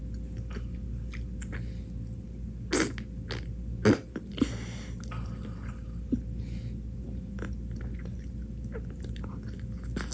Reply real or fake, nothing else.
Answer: real